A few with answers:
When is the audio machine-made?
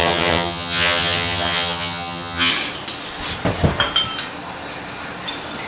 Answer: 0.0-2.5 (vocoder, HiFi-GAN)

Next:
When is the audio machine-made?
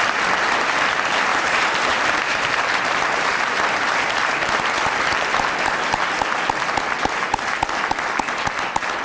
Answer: 1.3-5.7 (vocoder, BigVGAN v2)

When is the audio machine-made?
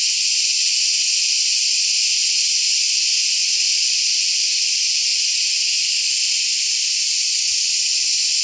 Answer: none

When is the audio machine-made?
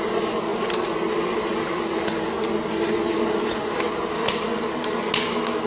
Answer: none